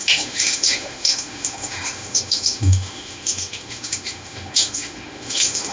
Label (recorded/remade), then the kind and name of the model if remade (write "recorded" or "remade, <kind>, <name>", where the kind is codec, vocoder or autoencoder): remade, autoencoder, DAC-VAE